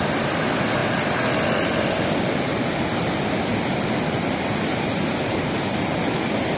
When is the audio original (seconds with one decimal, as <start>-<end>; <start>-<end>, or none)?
0.0-6.6